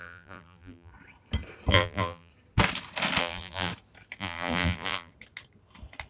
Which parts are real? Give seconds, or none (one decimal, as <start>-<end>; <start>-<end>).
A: 0.9-1.7; 2.3-3.2; 3.7-4.2; 5.1-6.1